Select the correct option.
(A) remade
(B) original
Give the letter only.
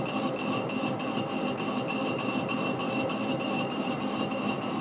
A